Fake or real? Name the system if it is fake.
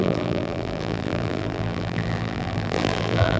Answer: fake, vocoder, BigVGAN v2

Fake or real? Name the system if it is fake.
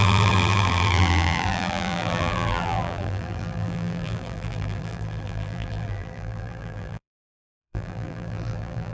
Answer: fake, vocoder, BigVGAN v2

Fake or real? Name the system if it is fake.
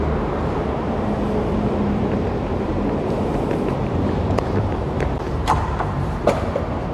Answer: fake, vocoder, BigVGAN v2